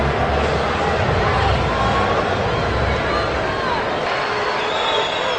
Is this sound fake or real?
real